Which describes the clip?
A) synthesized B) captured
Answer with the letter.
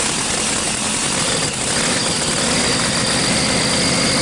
B